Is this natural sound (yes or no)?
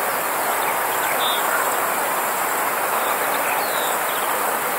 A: yes